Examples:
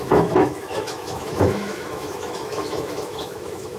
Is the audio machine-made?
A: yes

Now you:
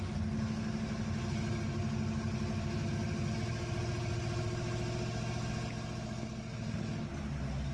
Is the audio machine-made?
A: no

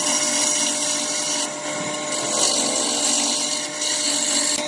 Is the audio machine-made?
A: no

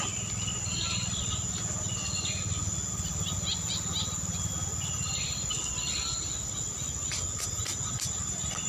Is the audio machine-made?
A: no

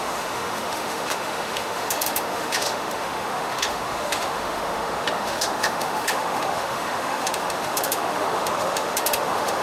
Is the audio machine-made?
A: yes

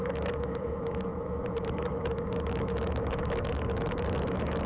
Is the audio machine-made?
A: yes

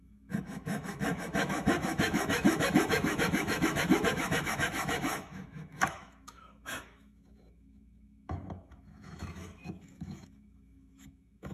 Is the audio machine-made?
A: yes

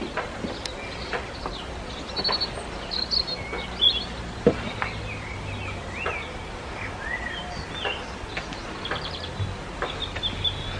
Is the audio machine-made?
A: no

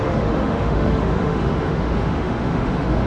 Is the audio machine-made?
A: yes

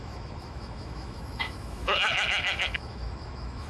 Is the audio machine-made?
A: yes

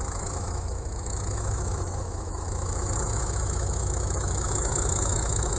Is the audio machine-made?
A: yes